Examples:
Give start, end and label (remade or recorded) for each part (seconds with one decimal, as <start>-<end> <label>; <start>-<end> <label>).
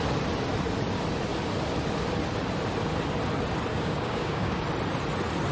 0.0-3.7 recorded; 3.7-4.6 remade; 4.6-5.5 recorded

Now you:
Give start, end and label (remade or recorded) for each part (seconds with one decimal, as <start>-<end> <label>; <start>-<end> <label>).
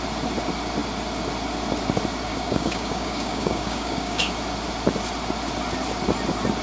0.0-2.3 recorded; 2.3-4.4 remade; 4.4-6.6 recorded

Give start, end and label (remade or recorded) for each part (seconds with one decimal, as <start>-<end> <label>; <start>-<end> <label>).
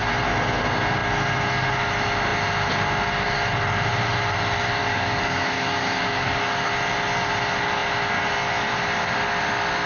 0.0-4.8 recorded; 4.8-6.7 remade; 6.7-9.9 recorded